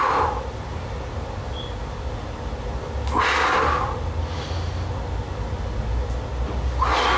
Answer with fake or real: real